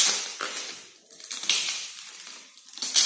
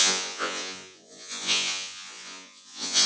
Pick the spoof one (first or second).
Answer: second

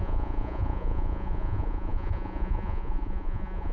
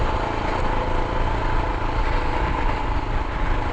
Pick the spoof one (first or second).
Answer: first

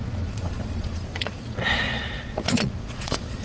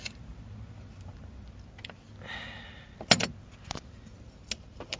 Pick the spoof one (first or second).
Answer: first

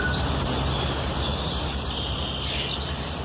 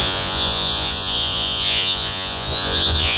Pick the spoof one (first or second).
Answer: second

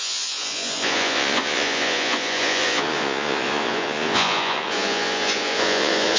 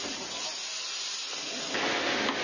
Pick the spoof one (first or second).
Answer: first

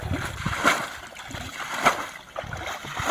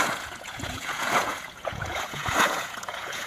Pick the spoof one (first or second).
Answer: second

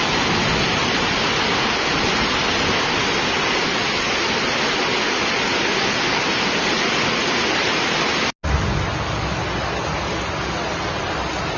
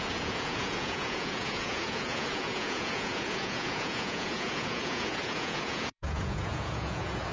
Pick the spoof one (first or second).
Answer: second